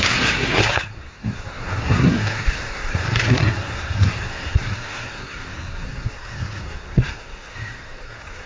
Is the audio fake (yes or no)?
yes